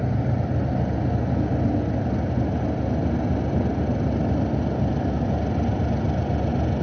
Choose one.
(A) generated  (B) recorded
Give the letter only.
B